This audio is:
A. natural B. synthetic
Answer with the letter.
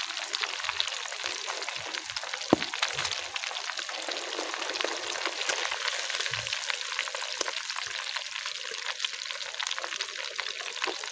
A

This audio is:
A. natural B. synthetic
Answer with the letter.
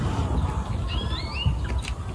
A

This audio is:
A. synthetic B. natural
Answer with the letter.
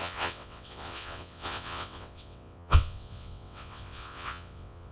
A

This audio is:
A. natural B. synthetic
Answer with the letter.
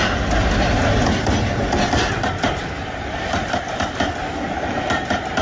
A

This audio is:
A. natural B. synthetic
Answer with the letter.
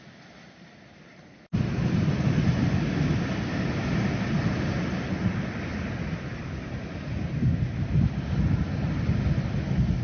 A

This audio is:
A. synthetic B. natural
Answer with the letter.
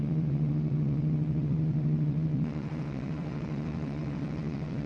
A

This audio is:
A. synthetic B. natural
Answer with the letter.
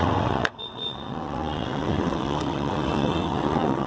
A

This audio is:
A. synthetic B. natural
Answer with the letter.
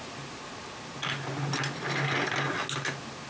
B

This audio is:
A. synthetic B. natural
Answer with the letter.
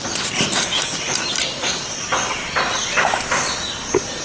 B